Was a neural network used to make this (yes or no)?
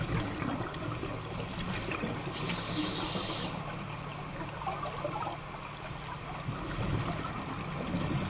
no